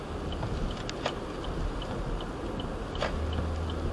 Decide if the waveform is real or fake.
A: real